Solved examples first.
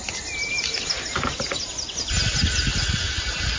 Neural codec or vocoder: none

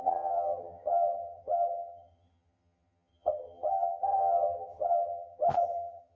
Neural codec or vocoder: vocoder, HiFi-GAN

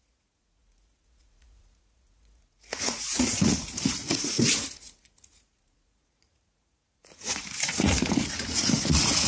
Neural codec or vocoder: vocoder, Vocos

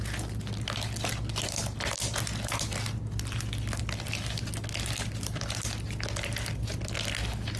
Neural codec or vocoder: none